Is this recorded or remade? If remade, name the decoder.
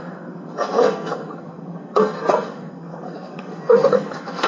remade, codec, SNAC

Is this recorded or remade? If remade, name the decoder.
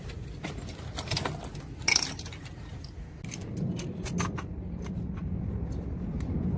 recorded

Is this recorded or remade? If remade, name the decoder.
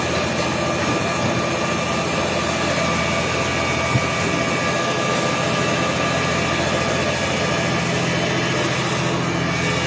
recorded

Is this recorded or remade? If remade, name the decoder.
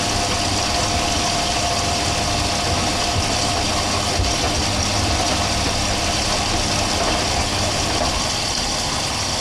recorded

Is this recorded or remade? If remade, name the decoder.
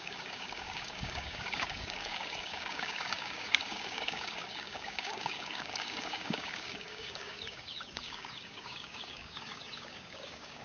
remade, codec, DAC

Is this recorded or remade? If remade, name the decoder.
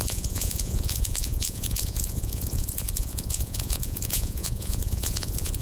remade, vocoder, Vocos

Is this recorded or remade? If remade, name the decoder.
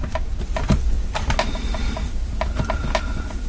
recorded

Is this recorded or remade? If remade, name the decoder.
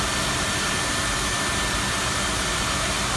recorded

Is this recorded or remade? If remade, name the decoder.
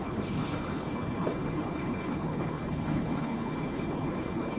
remade, codec, HILCodec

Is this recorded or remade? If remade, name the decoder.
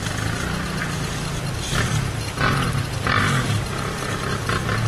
recorded